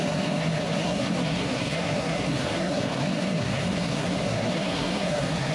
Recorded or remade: remade